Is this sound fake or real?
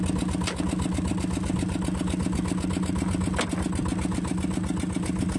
real